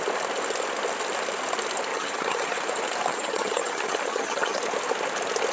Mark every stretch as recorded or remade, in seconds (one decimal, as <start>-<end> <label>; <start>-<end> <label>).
0.0-1.9 recorded; 1.9-2.6 remade; 2.6-3.1 recorded; 3.1-4.6 remade; 4.6-5.5 recorded

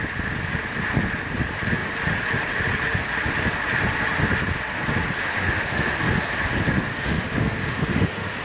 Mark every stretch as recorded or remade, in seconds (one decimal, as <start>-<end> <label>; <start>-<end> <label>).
0.0-5.2 recorded; 5.2-5.9 remade; 5.9-6.9 recorded; 6.9-8.4 remade

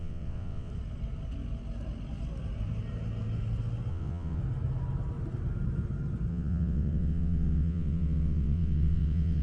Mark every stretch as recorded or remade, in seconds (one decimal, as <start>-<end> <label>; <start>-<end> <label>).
0.0-0.7 remade; 0.7-3.9 recorded; 3.9-4.4 remade; 4.4-6.3 recorded; 6.3-9.4 remade

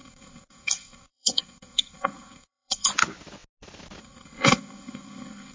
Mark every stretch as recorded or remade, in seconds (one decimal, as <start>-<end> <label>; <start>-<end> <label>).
0.0-2.9 remade; 2.9-4.0 recorded; 4.0-5.5 remade